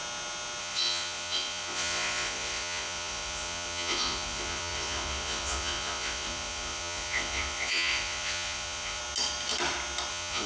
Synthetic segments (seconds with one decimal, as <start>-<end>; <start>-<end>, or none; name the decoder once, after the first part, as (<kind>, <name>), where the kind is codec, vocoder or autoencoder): 0.6-9.0 (vocoder, Vocos); 10.1-10.5